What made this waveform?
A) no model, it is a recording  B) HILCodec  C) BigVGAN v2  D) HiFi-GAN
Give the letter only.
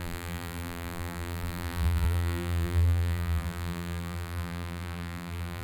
C